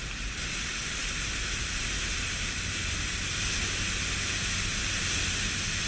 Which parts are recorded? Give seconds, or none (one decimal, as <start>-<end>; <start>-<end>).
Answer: 0.0-1.0; 3.6-4.7